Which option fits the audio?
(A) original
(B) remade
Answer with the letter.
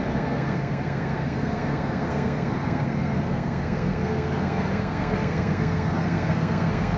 B